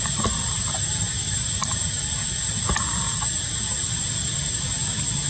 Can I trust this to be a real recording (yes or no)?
yes